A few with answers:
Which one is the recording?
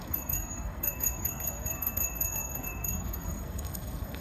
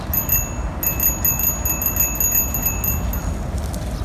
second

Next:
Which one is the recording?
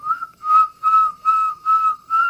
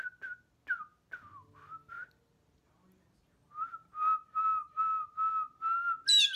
second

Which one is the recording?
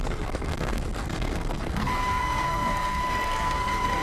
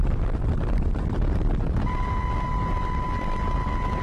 second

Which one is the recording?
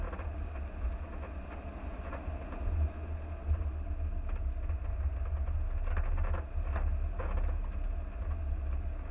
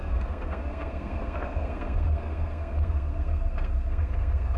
first